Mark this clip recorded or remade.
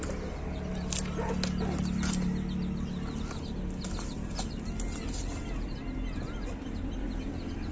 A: recorded